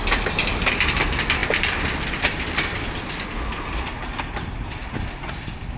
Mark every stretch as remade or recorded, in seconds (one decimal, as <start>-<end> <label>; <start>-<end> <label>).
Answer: 0.0-1.4 recorded; 1.4-3.9 remade; 3.9-5.8 recorded